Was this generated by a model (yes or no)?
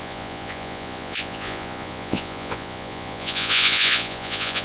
yes